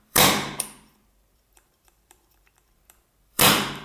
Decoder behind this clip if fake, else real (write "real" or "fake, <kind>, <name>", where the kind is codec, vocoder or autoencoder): fake, vocoder, BigVGAN v2